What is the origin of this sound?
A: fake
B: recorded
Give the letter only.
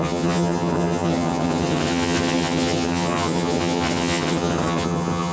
A